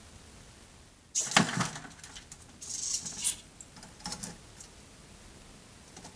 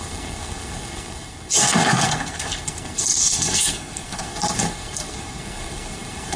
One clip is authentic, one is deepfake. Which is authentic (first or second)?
first